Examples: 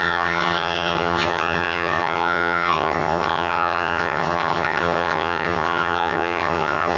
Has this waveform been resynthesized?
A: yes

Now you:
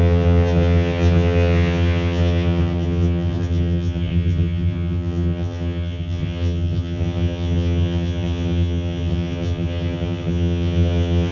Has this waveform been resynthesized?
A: yes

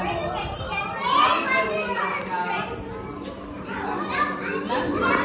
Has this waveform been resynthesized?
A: no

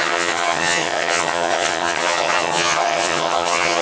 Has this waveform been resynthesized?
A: yes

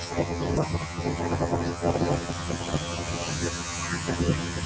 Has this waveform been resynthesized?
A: yes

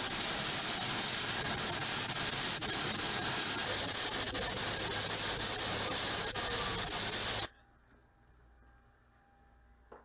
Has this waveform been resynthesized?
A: no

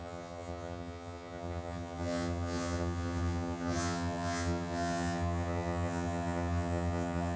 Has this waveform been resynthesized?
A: yes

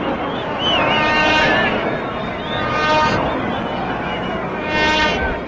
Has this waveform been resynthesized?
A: no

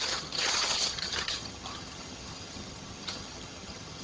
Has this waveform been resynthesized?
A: yes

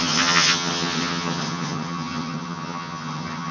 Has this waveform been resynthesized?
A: yes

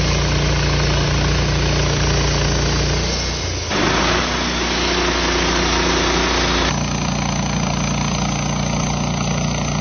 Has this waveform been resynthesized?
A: no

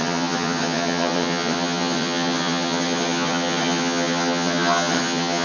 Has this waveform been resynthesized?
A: yes